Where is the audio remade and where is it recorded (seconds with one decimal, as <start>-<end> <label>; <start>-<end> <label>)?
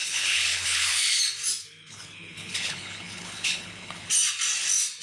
0.0-1.2 remade; 1.2-1.6 recorded; 1.6-4.1 remade; 4.1-5.0 recorded